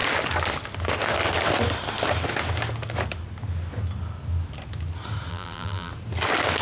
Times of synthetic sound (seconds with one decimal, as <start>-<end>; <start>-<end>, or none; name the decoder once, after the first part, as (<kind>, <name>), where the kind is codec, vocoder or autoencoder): 5.3-5.9 (vocoder, BigVGAN v2)